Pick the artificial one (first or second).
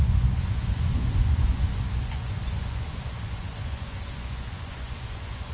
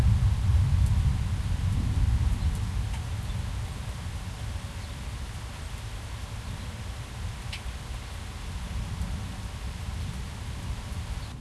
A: first